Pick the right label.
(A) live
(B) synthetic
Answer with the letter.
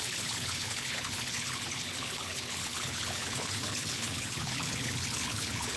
B